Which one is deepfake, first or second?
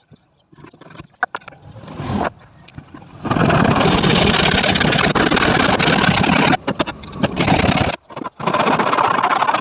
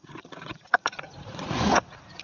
second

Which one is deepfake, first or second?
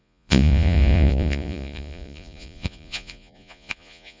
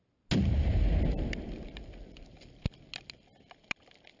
first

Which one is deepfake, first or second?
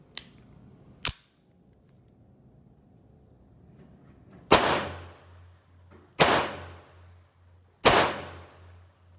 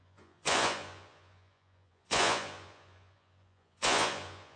second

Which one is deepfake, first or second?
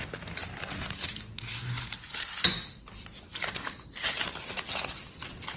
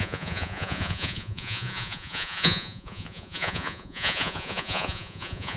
second